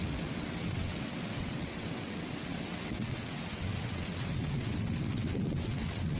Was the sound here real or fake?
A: fake